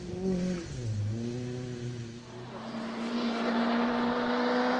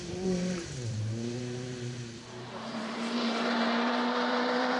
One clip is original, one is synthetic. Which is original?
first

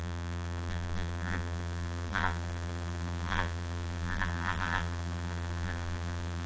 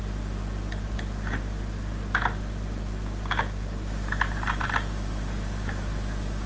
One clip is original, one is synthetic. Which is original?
second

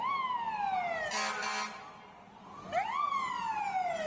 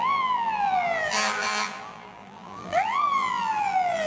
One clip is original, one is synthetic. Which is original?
first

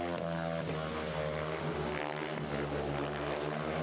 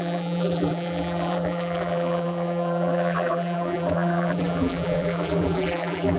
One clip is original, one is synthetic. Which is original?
first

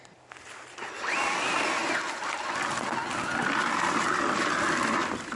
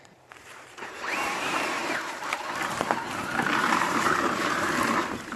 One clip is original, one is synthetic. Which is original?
first